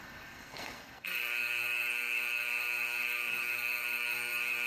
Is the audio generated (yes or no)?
yes